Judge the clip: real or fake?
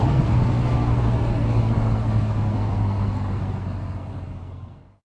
fake